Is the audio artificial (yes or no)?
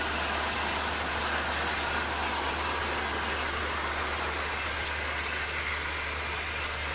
no